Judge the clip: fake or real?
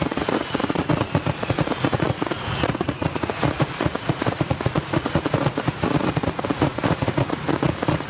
fake